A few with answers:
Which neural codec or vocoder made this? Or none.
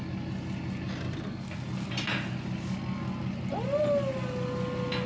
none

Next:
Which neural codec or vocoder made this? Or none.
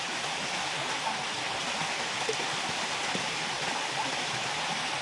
none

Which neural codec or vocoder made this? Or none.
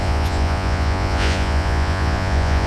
vocoder, Vocos